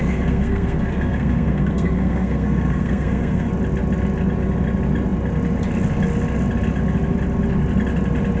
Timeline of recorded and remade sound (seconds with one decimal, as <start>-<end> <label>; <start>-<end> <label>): 0.0-3.5 remade; 3.5-8.4 recorded